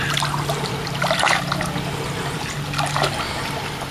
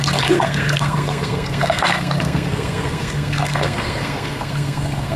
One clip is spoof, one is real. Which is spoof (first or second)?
second